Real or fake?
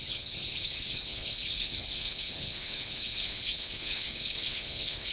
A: fake